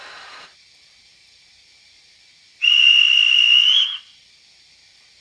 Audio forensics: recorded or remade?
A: remade